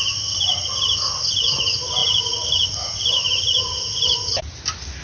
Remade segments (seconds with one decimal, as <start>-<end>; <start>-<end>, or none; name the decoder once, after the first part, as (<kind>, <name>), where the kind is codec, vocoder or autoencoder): none